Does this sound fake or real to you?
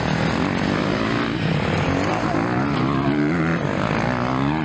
real